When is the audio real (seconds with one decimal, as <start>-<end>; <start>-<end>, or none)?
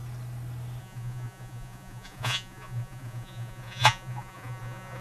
0.0-0.8